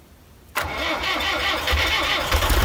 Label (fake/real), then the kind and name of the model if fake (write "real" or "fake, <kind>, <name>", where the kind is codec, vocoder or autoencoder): real